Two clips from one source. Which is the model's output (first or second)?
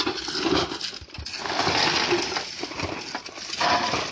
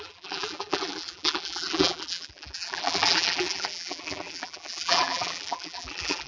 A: second